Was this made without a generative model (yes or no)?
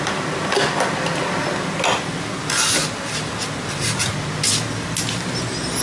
yes